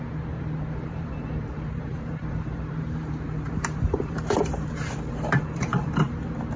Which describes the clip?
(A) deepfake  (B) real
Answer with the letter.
A